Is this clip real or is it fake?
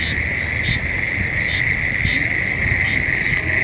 real